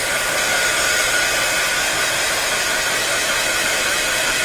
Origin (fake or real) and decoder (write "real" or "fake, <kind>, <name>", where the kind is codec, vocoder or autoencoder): real